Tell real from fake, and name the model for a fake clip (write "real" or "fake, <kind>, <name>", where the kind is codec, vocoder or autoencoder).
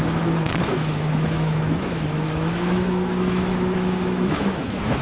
fake, autoencoder, DAC-VAE